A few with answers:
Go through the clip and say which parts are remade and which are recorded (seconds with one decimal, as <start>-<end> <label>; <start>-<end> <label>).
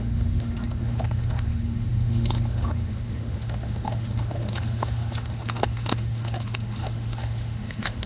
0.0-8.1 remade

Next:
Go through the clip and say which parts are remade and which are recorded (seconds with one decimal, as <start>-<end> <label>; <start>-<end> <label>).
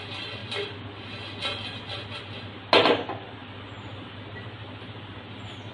0.0-5.7 recorded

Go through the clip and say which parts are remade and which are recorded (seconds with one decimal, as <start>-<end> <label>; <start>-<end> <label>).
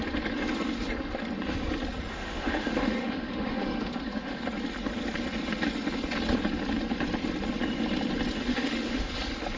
0.0-2.1 recorded; 2.1-4.4 remade; 4.4-8.5 recorded; 8.5-9.1 remade; 9.1-9.6 recorded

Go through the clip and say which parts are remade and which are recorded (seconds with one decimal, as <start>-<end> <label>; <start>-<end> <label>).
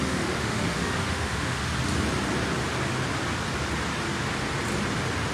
0.0-1.7 remade; 1.7-5.3 recorded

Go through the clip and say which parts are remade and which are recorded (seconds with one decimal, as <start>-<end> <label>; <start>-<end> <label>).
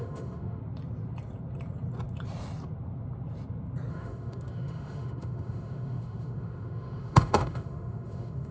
0.0-0.6 remade; 0.6-3.9 recorded; 3.9-8.5 remade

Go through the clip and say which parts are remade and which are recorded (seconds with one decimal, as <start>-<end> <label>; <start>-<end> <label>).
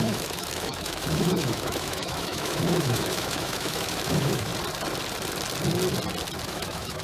0.0-4.5 remade; 4.5-6.5 recorded; 6.5-7.0 remade